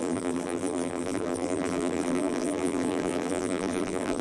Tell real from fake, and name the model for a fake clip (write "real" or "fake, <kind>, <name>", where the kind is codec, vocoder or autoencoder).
fake, vocoder, BigVGAN v2